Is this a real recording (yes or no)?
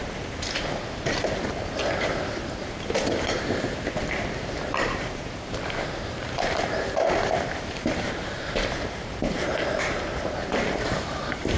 no